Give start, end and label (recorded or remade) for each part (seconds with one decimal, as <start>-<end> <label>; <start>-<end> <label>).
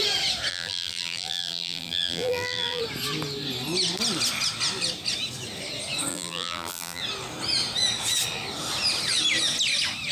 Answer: 0.0-0.5 recorded; 0.5-2.8 remade; 2.8-6.1 recorded; 6.1-7.0 remade; 7.0-10.1 recorded